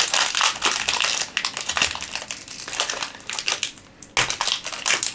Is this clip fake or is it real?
real